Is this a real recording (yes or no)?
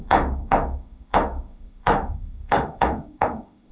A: no